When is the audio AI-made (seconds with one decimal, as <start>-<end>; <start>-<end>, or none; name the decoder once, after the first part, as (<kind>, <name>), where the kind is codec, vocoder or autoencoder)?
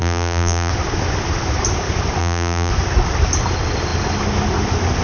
0.0-0.7 (vocoder, BigVGAN v2); 2.2-2.7